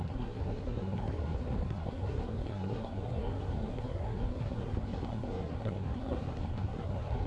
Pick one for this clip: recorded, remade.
remade